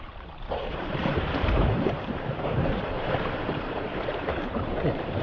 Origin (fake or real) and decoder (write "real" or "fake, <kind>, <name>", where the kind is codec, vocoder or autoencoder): fake, vocoder, BigVGAN v2